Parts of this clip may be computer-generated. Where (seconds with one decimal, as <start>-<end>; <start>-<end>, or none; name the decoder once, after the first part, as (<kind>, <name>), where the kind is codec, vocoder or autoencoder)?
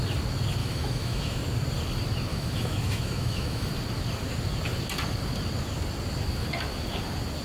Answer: 0.6-1.4 (autoencoder, DAC-VAE); 2.3-3.7